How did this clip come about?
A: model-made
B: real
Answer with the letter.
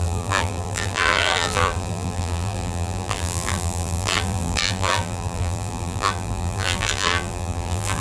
A